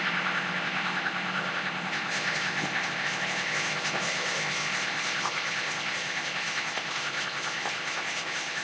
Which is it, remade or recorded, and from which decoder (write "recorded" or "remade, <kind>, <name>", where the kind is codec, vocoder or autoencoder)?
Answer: remade, codec, ZipCodec